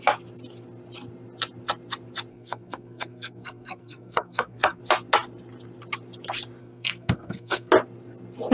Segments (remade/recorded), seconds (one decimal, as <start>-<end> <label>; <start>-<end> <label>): 0.0-2.3 recorded; 2.3-4.8 remade; 4.8-6.6 recorded; 6.6-7.7 remade; 7.7-8.5 recorded